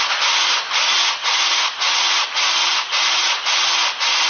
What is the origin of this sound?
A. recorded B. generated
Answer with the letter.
A